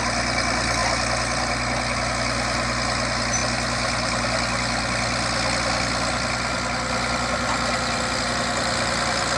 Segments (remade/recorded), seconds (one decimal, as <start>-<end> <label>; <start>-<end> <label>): 0.0-9.4 recorded